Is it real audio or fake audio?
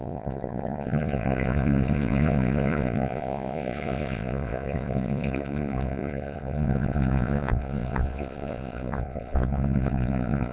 fake